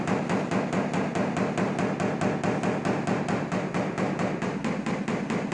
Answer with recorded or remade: recorded